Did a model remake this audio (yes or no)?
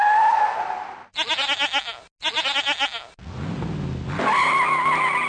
no